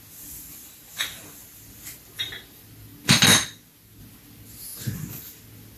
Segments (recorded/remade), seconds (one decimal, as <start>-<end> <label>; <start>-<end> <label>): 0.0-5.8 recorded